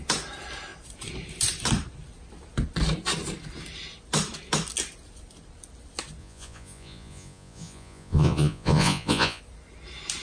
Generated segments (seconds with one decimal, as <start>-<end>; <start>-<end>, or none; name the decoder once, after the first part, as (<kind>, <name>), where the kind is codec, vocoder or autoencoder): 6.2-9.4 (vocoder, Vocos)